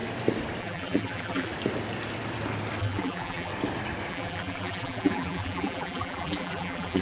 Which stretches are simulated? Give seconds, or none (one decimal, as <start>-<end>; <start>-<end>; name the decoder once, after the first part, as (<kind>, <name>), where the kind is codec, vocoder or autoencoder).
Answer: 0.6-1.5 (vocoder, BigVGAN v2); 2.8-3.5; 4.1-7.0